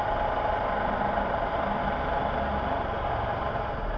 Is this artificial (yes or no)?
no